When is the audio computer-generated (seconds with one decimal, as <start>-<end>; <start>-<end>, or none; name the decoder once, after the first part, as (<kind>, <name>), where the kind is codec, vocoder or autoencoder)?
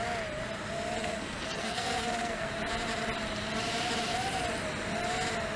1.0-2.5 (codec, SNAC)